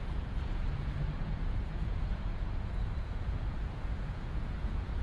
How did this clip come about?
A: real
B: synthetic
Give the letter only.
B